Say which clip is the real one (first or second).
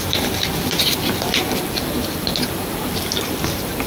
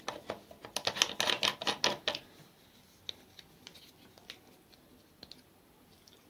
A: second